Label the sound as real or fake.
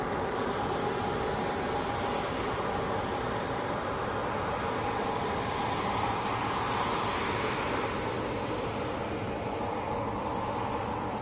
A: real